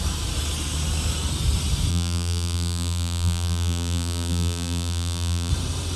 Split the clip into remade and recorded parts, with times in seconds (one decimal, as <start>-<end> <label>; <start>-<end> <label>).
0.0-1.9 recorded; 1.9-5.5 remade; 5.5-6.0 recorded